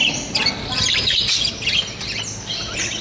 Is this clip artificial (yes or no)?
no